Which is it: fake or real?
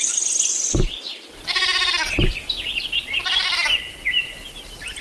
real